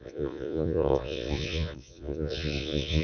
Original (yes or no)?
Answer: no